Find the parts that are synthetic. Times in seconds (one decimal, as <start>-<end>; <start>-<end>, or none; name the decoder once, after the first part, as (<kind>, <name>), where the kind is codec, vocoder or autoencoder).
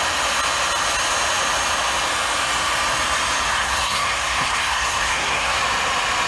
3.6-5.6 (codec, SNAC)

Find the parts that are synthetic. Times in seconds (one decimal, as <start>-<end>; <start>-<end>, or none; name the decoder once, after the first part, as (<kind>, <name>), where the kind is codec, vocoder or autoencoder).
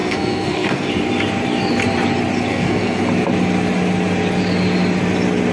0.0-0.9 (codec, SNAC); 2.5-3.0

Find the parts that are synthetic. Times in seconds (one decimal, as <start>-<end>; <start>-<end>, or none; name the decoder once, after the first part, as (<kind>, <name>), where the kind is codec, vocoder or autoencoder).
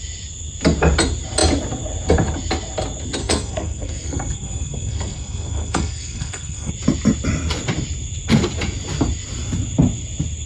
3.2-6.7 (codec, SNAC)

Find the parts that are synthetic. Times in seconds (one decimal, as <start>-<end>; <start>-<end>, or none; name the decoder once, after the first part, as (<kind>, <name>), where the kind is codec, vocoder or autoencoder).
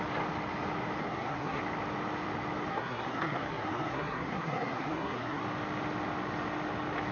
1.0-1.6 (codec, SNAC); 2.7-5.4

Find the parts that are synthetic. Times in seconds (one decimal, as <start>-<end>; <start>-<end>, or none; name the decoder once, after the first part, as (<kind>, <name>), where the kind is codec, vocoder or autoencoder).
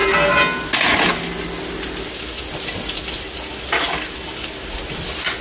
none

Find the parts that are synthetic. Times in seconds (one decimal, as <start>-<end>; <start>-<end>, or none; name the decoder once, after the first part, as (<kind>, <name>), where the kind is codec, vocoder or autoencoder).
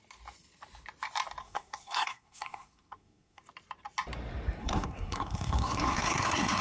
1.4-3.4 (codec, SNAC); 4.6-6.6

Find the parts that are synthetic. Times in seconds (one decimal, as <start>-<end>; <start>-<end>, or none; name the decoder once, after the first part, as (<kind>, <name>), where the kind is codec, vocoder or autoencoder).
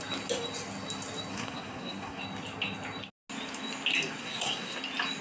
1.3-2.2 (codec, SNAC); 4.2-4.8